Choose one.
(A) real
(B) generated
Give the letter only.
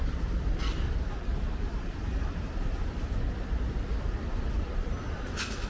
B